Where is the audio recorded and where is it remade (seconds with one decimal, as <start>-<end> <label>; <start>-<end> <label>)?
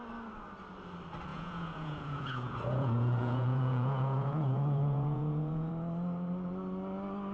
0.0-1.3 recorded; 1.3-5.7 remade; 5.7-7.3 recorded